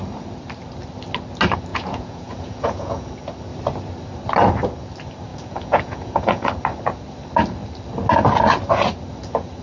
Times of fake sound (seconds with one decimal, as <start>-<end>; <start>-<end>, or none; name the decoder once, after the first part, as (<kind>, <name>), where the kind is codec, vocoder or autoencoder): 1.7-3.1 (vocoder, Vocos); 5.3-6.5